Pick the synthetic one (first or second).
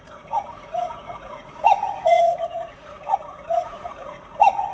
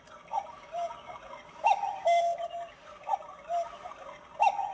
first